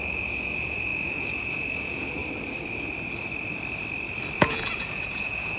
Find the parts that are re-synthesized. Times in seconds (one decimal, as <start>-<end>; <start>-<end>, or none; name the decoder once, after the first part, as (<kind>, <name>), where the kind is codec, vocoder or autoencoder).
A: 0.0-2.2 (vocoder, Vocos); 4.4-5.6